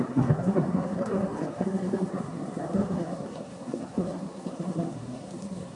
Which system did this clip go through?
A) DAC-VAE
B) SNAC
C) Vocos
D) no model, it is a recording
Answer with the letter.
B